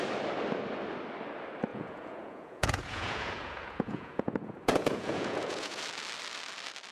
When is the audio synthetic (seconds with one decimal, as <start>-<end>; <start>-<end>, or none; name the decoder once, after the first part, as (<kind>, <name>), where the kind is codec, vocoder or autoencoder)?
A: 1.7-5.8 (vocoder, Vocos)